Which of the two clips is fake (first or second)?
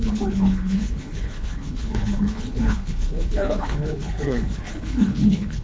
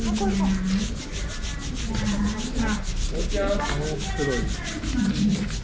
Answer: first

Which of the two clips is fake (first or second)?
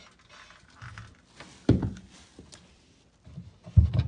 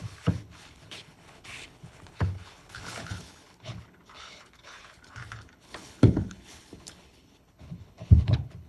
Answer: second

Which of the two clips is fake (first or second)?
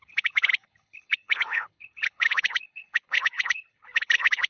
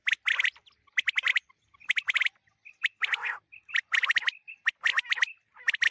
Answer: first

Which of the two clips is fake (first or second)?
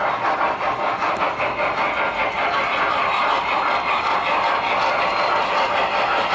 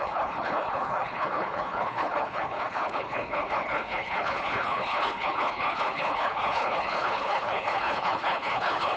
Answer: second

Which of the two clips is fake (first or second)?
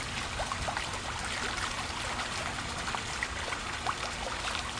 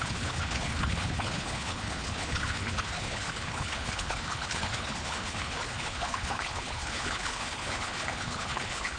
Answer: second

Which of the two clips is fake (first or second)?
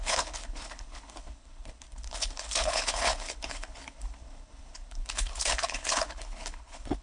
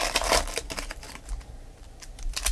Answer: first